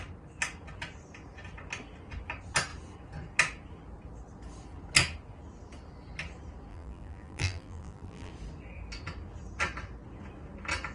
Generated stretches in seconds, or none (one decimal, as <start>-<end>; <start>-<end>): 6.7-8.3